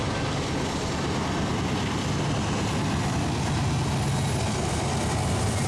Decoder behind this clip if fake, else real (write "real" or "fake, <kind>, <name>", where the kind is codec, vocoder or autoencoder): real